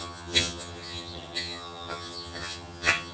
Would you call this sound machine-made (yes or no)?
yes